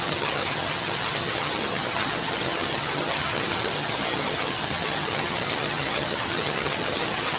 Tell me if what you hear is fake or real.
fake